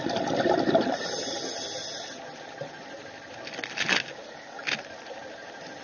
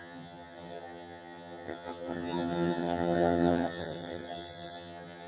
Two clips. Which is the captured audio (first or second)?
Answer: first